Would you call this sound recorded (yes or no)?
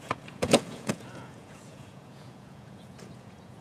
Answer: no